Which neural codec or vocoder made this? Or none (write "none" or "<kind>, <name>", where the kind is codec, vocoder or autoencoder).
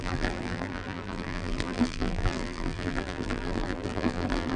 vocoder, BigVGAN v2